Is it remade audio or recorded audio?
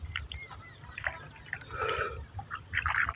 recorded